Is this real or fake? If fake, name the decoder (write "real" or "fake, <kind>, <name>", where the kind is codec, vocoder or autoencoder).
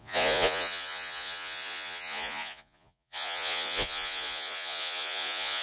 fake, vocoder, Vocos